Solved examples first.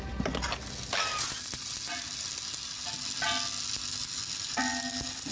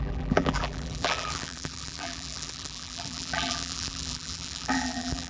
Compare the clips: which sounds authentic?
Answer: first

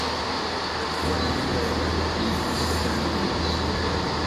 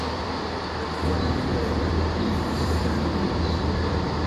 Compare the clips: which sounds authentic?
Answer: first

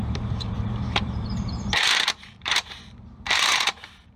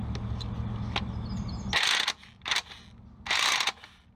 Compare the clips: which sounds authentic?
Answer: second